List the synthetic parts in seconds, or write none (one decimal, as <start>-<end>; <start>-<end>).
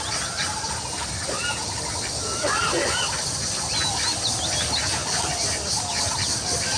none